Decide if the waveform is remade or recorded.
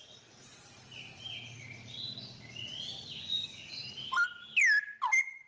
recorded